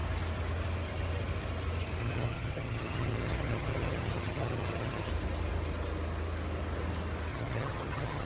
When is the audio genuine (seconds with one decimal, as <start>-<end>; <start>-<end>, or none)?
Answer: 0.0-2.0; 5.1-7.3